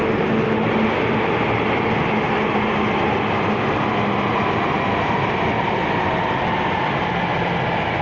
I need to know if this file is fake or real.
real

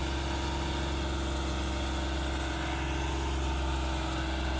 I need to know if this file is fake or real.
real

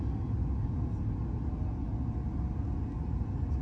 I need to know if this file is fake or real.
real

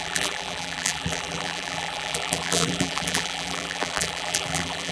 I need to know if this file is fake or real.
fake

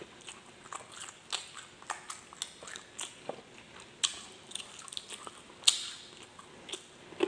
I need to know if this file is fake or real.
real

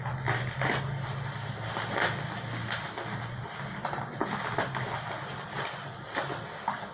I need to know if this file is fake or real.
real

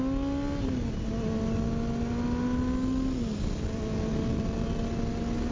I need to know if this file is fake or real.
real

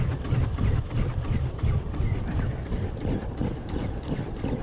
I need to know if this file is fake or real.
real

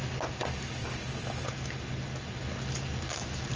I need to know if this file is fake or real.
real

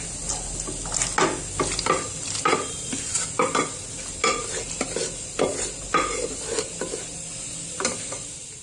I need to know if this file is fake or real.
real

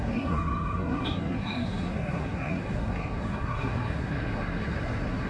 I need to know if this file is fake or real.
fake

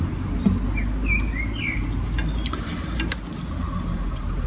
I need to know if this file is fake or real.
real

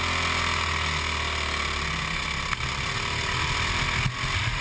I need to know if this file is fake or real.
real